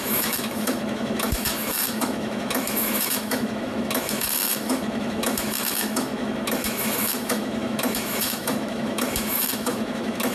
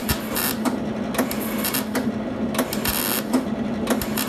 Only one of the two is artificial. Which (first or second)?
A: first